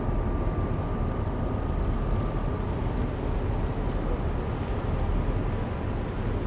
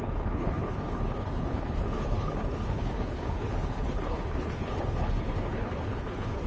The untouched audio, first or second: first